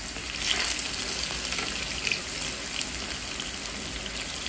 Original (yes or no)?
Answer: yes